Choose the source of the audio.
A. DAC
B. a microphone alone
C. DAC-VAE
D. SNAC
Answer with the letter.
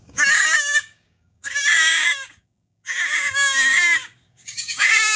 A